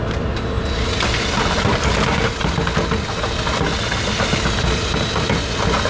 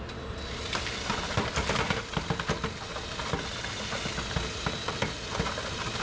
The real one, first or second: first